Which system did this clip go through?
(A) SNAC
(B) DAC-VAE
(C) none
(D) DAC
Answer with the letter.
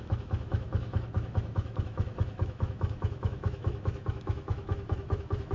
B